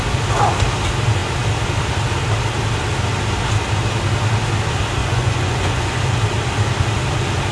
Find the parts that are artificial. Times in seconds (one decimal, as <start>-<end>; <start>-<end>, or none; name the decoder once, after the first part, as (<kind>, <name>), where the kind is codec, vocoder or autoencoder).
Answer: 5.0-6.0 (vocoder, Vocos)